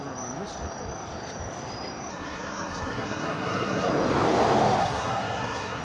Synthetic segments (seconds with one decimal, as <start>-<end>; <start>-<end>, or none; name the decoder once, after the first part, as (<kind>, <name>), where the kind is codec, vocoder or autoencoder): 2.1-3.9 (codec, SNAC); 4.8-5.8